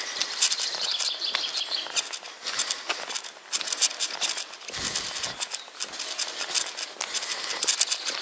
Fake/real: real